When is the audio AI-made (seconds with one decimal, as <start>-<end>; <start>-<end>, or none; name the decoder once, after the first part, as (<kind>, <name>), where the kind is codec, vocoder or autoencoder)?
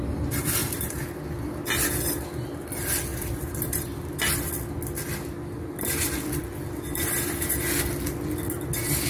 0.6-1.2 (vocoder, BigVGAN v2); 3.1-4.2